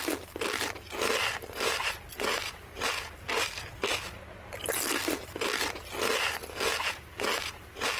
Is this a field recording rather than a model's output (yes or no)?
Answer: yes